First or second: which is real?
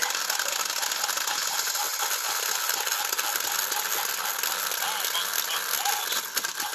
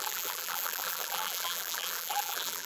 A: first